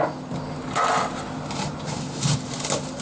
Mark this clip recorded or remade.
recorded